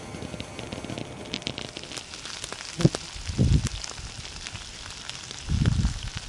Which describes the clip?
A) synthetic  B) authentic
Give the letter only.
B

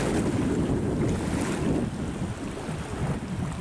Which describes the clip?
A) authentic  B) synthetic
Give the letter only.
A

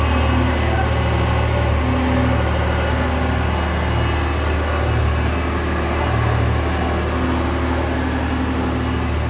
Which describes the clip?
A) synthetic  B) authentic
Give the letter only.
B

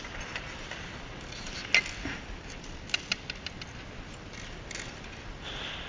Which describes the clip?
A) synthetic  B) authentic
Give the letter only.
B